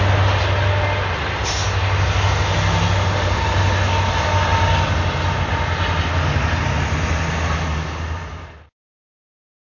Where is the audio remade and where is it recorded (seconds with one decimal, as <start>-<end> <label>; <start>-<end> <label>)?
0.0-9.8 recorded